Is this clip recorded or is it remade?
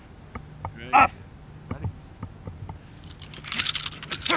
recorded